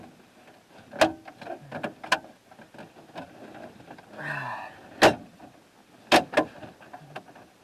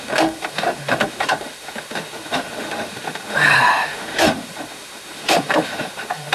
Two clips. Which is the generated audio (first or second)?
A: second